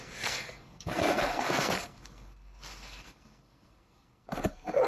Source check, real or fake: fake